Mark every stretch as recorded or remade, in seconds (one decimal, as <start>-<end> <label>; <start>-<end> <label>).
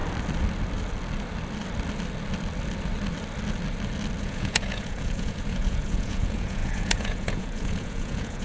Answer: 0.0-4.2 recorded; 4.2-8.4 remade